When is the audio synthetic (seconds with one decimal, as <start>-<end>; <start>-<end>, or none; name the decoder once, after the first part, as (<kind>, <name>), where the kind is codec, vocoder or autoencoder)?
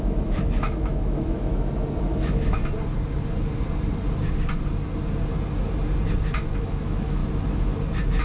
0.0-1.5 (autoencoder, DAC-VAE); 2.0-2.6; 6.6-7.2